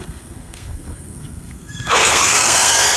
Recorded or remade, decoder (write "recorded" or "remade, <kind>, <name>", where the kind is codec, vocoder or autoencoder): remade, codec, SNAC